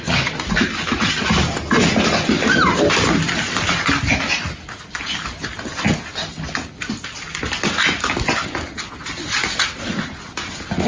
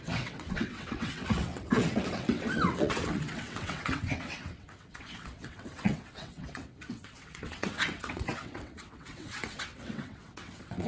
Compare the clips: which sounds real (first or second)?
first